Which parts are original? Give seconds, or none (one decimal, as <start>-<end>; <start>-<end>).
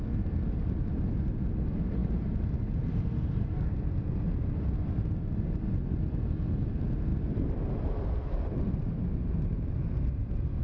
0.0-10.6